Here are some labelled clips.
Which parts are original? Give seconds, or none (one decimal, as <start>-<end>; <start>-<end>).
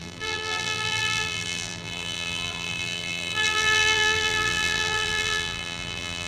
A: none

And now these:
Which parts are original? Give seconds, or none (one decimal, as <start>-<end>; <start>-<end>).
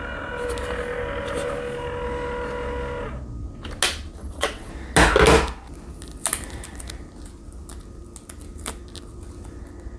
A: 0.0-4.2; 4.7-10.0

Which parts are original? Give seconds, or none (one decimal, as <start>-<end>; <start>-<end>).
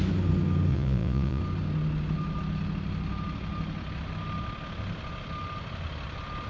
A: 0.0-0.7; 1.4-6.5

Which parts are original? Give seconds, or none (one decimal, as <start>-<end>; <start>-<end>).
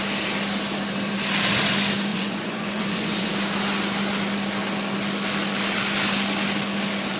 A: 0.0-2.1; 3.3-7.2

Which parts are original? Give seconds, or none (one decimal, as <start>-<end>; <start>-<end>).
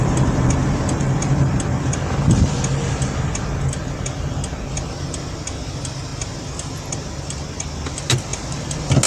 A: 0.0-9.1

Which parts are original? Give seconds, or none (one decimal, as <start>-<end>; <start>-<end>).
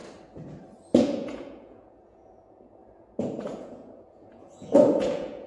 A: 0.0-1.0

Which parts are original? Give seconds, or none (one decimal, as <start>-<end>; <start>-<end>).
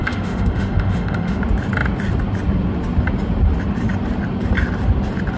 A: 1.4-5.4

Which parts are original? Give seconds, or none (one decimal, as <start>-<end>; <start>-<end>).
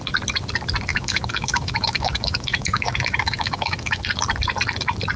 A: 0.0-0.9; 4.0-5.2